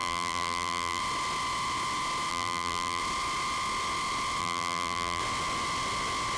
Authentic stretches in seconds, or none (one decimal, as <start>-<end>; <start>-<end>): 1.0-2.3; 3.0-4.4; 5.2-6.4